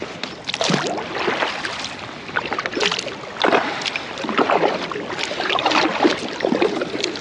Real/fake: real